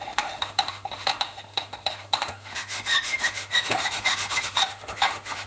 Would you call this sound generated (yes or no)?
yes